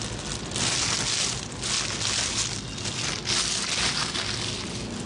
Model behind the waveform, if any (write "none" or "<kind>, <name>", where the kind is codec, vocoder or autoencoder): none